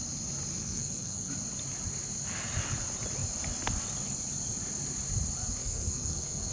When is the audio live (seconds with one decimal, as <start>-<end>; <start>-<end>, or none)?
0.0-0.6; 1.3-5.6

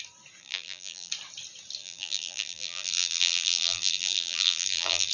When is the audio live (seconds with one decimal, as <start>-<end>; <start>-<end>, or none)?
0.0-0.4; 1.1-1.8

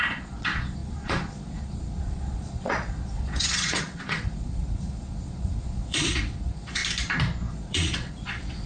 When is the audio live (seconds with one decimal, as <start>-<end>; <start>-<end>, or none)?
6.8-7.5